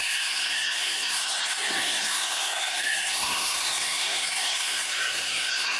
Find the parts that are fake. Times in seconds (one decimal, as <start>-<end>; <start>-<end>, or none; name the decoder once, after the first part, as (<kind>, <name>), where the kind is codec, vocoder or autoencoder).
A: 0.0-5.8 (codec, SNAC)

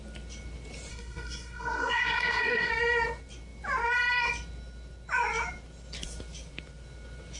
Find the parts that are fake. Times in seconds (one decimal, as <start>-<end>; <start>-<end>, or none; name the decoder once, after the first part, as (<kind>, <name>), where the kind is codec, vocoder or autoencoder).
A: 0.9-2.7 (codec, SNAC)

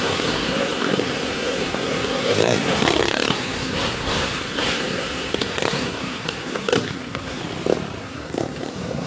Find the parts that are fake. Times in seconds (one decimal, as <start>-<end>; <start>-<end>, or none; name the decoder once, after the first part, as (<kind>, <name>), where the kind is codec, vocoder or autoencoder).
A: 0.0-7.4 (codec, SNAC); 8.0-9.1

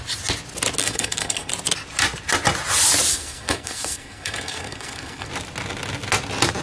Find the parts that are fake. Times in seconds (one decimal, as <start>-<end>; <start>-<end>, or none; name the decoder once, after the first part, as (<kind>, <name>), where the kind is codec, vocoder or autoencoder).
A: 0.8-1.5 (codec, SNAC); 3.1-5.3

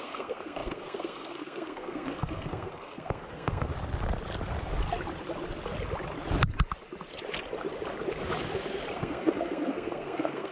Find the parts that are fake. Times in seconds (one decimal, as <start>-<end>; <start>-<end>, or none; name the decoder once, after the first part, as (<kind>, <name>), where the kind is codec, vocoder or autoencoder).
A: 0.0-3.7 (codec, SNAC); 8.9-10.5

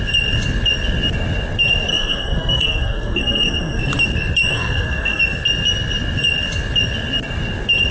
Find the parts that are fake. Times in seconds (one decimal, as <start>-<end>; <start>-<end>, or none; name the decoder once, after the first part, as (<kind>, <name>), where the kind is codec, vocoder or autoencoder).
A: 1.9-3.8 (codec, SNAC); 4.5-5.2

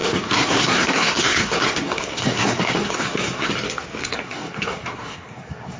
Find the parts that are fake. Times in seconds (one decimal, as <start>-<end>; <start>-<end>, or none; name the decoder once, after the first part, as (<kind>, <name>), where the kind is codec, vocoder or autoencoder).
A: 0.0-3.5 (codec, SNAC); 4.0-5.8

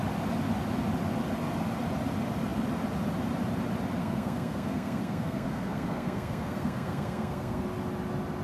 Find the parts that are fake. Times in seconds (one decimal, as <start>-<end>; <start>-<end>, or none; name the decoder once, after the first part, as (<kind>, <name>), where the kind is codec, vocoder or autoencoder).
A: 4.0-7.6 (codec, SNAC)